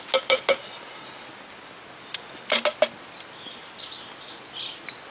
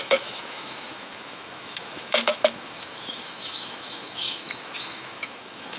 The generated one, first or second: second